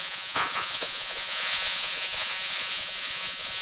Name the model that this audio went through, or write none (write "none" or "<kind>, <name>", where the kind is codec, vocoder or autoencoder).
vocoder, Vocos